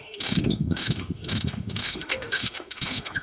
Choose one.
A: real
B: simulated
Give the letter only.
B